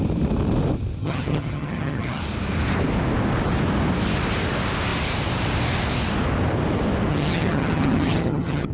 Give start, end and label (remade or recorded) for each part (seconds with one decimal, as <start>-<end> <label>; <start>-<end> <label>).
0.0-1.0 recorded; 1.0-2.2 remade; 2.2-7.1 recorded; 7.1-8.7 remade